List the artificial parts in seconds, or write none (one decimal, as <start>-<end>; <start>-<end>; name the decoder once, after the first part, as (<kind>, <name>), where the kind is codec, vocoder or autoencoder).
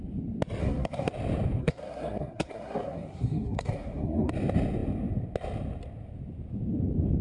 0.6-1.1 (codec, SNAC); 1.6-4.3